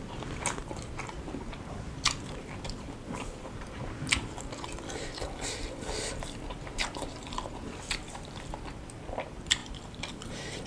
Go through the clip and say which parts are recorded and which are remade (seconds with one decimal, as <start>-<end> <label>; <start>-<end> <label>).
0.0-0.6 remade; 0.6-1.1 recorded; 1.1-9.6 remade; 9.6-10.1 recorded; 10.1-10.7 remade